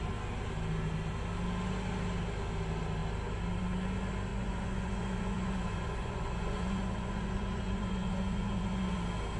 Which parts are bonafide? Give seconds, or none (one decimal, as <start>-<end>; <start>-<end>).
0.0-4.3; 9.0-9.4